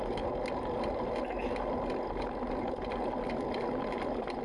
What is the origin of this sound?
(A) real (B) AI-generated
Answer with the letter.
A